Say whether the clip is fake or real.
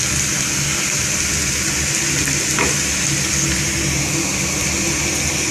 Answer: real